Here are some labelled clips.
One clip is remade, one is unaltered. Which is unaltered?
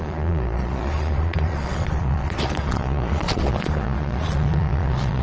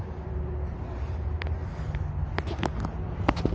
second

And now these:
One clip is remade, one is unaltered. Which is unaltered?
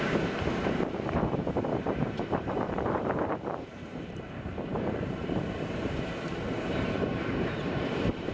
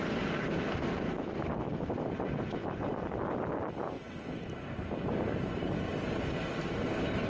second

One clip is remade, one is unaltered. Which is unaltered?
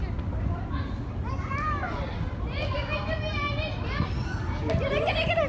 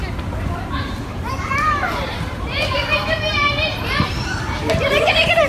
first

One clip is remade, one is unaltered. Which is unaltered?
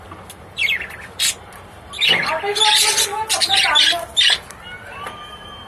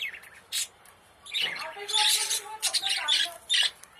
first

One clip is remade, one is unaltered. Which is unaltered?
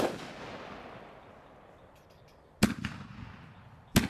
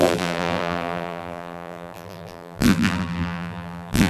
first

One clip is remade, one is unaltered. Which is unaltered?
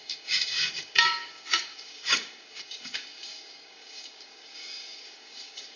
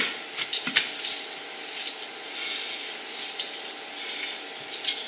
second